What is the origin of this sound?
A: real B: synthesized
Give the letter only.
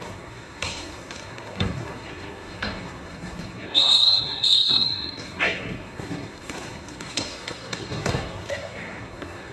B